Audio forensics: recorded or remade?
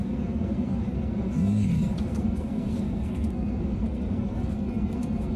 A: remade